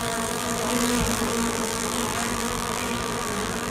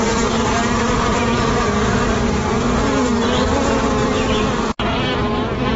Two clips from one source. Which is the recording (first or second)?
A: second